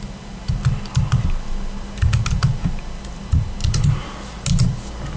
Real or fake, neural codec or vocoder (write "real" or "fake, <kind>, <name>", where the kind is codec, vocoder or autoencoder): real